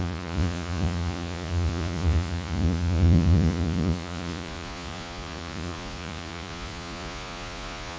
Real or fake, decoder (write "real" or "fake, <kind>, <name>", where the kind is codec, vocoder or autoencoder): fake, vocoder, Vocos